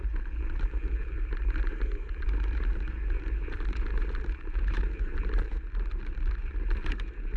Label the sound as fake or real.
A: fake